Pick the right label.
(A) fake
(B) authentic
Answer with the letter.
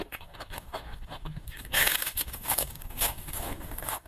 A